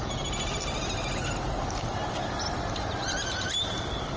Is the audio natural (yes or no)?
yes